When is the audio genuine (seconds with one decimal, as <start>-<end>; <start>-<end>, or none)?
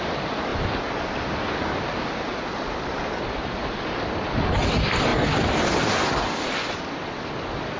0.0-7.8